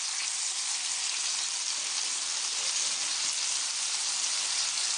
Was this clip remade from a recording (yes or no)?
no